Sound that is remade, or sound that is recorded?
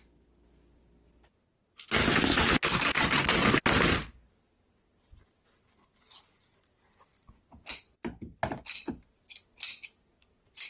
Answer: recorded